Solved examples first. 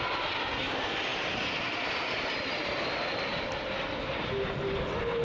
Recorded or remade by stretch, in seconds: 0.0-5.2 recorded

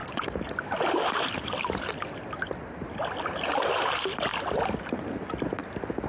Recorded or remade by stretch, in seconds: 0.0-6.1 recorded

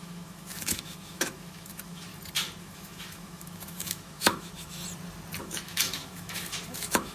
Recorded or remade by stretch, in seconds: 0.0-2.1 remade; 2.1-2.6 recorded; 2.6-4.8 remade; 4.8-5.4 recorded; 5.4-7.1 remade

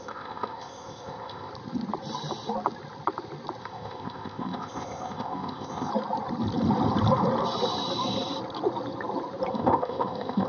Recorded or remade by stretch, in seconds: 0.0-1.5 remade; 1.5-3.6 recorded; 3.6-5.9 remade; 5.9-9.5 recorded; 9.5-10.5 remade

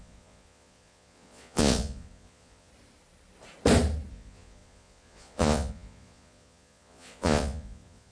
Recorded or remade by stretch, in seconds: 0.0-2.7 remade; 2.7-4.1 recorded; 4.1-8.1 remade

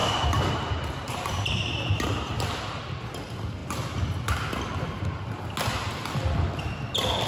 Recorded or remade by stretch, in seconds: 0.0-1.0 recorded; 1.0-1.5 remade; 1.5-7.3 recorded

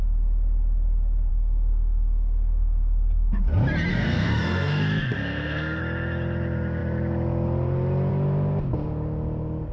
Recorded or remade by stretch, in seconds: 0.0-1.3 recorded; 1.3-3.5 remade; 3.5-3.9 recorded; 3.9-5.8 remade; 5.8-9.7 recorded

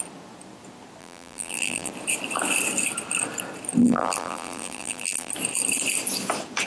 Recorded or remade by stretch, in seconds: 0.0-1.0 recorded; 1.0-1.9 remade; 1.9-3.8 recorded; 3.8-5.3 remade; 5.3-6.7 recorded